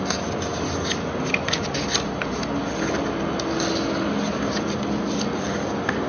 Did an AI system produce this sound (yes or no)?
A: no